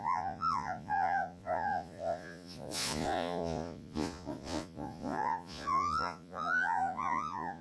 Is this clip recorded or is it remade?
remade